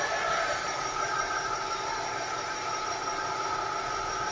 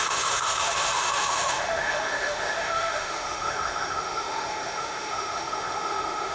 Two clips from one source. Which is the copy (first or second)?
second